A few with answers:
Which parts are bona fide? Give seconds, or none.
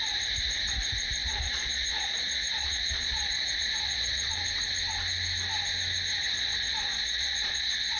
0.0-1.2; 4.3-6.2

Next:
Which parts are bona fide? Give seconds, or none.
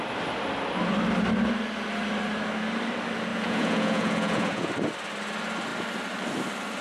0.0-3.3; 4.7-6.8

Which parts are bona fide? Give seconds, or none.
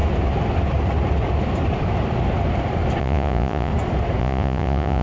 0.0-3.0; 3.7-4.2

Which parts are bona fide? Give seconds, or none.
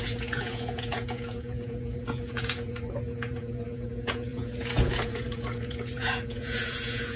none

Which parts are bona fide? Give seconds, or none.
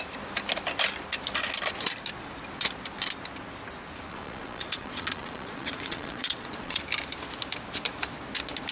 0.0-4.1; 6.8-8.7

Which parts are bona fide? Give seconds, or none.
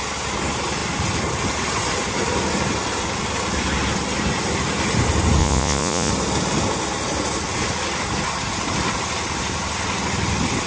0.0-5.4; 6.1-10.7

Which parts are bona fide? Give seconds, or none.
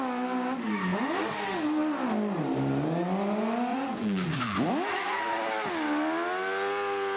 0.0-3.7; 4.7-7.2